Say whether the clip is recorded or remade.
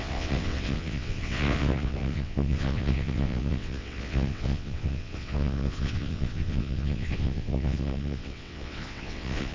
remade